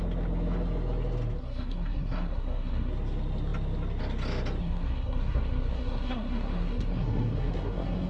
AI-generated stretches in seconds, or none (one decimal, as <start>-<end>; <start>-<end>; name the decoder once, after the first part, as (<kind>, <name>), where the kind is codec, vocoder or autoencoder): 1.4-2.9 (codec, SNAC); 4.6-8.1